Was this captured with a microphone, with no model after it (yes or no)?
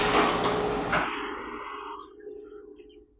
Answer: yes